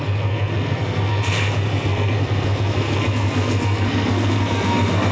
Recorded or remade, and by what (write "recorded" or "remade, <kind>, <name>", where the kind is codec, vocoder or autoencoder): remade, codec, SNAC